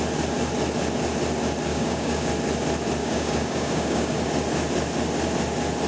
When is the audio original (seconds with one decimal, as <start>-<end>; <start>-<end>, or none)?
0.0-1.7; 2.3-3.0; 4.2-5.9